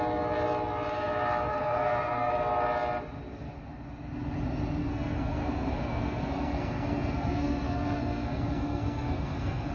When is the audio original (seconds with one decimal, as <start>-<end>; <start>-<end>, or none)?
0.0-1.5; 2.3-4.8